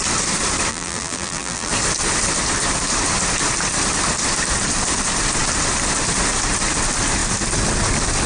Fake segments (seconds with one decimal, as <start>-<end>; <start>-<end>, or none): 0.7-1.7